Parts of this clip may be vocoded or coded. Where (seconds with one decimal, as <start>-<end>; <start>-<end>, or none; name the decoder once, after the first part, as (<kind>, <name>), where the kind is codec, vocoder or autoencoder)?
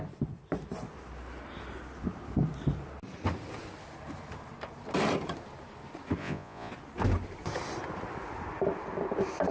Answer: 6.2-6.7 (vocoder, Vocos)